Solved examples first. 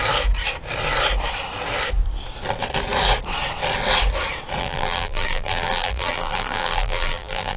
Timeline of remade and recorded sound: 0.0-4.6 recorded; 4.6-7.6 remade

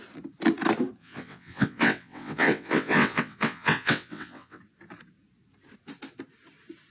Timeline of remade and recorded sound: 0.0-1.0 recorded; 1.0-4.6 remade; 4.6-6.9 recorded

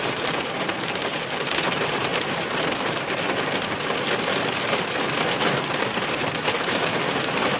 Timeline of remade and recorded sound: 0.0-2.1 remade; 2.1-6.1 recorded; 6.1-7.6 remade

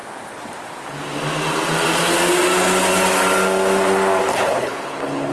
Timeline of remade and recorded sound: 0.0-4.3 recorded; 4.3-5.3 remade

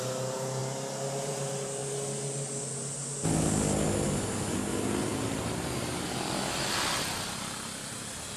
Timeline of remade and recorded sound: 0.0-8.4 recorded

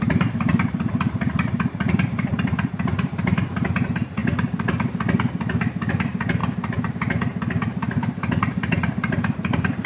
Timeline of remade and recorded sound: 0.0-4.2 remade; 4.2-5.9 recorded; 5.9-6.4 remade; 6.4-6.9 recorded; 6.9-9.9 remade

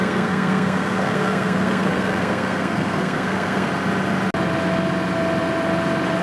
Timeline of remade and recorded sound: 0.0-3.7 remade; 3.7-6.2 recorded